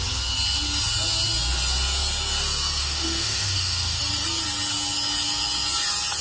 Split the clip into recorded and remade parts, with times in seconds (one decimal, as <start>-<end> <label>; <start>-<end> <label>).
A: 0.0-2.8 recorded; 2.8-4.0 remade; 4.0-6.2 recorded